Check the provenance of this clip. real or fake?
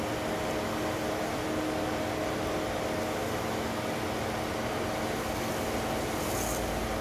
real